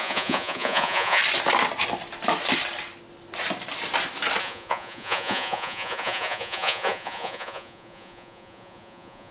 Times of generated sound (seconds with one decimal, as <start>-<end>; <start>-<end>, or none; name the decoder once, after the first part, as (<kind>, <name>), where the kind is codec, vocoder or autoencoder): 0.0-1.2 (vocoder, Vocos); 4.4-9.3